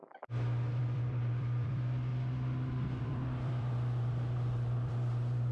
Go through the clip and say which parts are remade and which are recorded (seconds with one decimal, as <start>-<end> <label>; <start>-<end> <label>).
0.0-0.8 recorded; 0.8-2.1 remade; 2.1-3.0 recorded; 3.0-5.5 remade